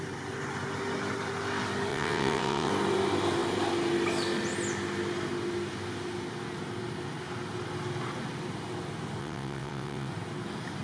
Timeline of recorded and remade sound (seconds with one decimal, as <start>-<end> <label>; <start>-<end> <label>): 0.0-1.9 recorded; 1.9-2.7 remade; 2.7-9.2 recorded; 9.2-10.1 remade; 10.1-10.8 recorded